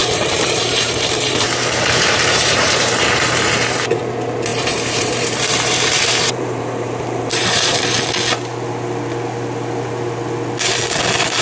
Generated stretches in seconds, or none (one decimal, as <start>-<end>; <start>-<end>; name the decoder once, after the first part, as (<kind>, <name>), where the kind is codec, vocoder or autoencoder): 0.0-4.0 (vocoder, BigVGAN v2); 4.5-8.0